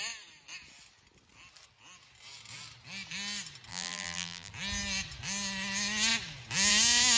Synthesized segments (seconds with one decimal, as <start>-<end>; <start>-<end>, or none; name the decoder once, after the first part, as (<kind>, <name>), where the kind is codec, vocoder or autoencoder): 3.7-4.5 (vocoder, BigVGAN v2)